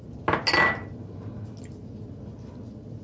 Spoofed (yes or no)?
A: no